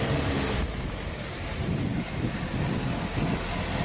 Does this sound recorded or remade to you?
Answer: recorded